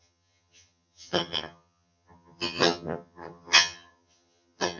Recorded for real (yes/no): no